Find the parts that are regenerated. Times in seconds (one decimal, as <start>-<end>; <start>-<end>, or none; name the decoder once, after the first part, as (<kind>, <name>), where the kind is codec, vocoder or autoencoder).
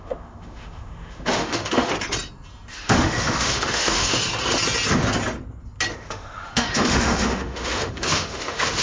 0.0-1.9 (autoencoder, DAC-VAE); 2.7-4.2; 5.9-8.8